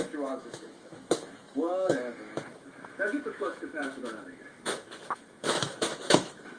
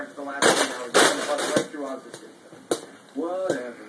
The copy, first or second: first